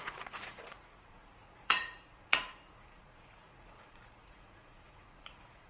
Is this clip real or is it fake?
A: fake